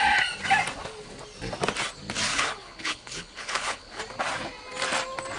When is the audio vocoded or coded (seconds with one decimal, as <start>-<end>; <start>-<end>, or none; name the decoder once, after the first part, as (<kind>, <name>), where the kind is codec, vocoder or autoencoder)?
2.3-4.0 (codec, HILCodec)